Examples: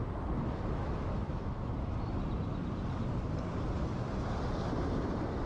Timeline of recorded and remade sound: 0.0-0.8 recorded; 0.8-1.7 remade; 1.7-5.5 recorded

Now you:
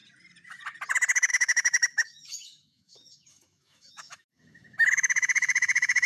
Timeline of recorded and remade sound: 0.0-1.3 recorded; 1.3-6.1 remade

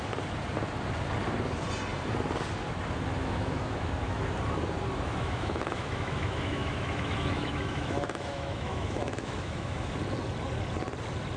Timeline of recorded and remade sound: 0.0-3.2 recorded; 3.2-4.2 remade; 4.2-5.1 recorded; 5.1-9.9 remade; 9.9-11.4 recorded

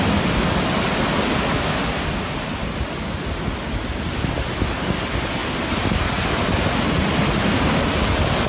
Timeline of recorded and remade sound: 0.0-8.5 recorded

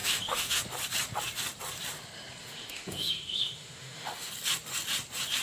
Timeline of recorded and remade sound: 0.0-0.6 remade; 0.6-2.4 recorded; 2.4-4.3 remade; 4.3-5.4 recorded

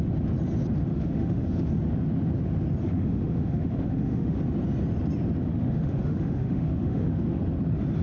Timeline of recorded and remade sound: 0.0-0.9 recorded; 0.9-1.7 remade; 1.7-2.8 recorded; 2.8-4.4 remade; 4.4-5.5 recorded; 5.5-7.4 remade; 7.4-8.0 recorded

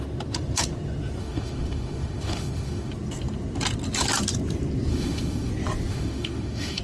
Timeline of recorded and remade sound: 0.0-1.2 recorded; 1.2-2.9 remade; 2.9-4.9 recorded; 4.9-5.5 remade; 5.5-5.9 recorded; 5.9-6.8 remade

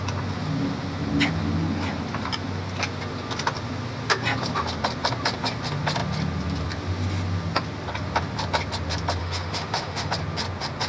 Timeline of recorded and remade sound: 0.0-9.2 recorded; 9.2-10.1 remade; 10.1-10.9 recorded